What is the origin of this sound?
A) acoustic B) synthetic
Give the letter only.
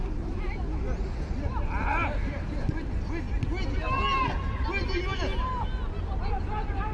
A